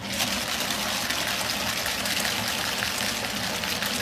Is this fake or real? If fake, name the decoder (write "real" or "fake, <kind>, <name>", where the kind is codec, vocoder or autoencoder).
real